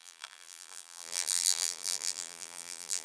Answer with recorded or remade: remade